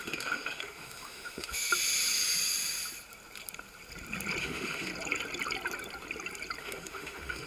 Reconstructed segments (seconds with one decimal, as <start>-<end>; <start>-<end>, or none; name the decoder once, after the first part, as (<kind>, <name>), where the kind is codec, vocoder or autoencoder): 0.0-1.7 (autoencoder, DAC-VAE); 4.4-4.9; 6.6-7.5